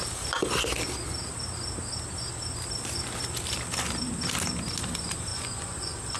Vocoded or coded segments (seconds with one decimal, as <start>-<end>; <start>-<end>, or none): 5.3-6.2

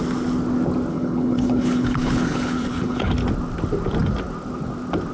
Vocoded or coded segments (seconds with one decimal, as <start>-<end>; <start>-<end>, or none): 0.9-3.1

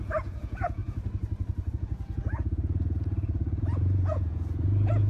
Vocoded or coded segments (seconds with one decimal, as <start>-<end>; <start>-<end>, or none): 0.0-0.8; 1.7-5.1

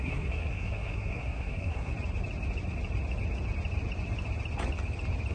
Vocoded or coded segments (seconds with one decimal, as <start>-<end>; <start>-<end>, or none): 0.0-1.9

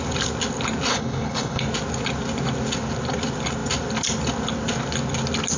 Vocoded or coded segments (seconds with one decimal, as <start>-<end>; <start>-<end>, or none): 0.9-1.6

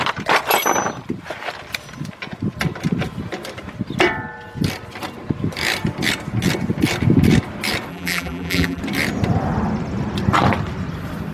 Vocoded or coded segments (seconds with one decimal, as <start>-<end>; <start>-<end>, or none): 7.9-8.8